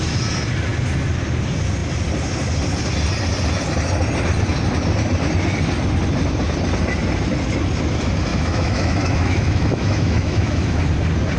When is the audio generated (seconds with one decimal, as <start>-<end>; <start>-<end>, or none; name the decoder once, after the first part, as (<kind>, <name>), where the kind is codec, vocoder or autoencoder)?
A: 8.3-10.8 (autoencoder, DAC-VAE)